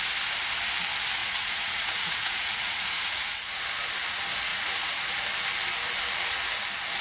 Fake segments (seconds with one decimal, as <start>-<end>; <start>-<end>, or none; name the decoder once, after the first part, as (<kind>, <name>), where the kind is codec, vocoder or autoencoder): 1.2-3.6 (vocoder, Vocos); 4.5-5.1